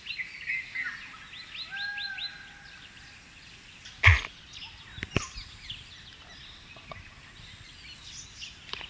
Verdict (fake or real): real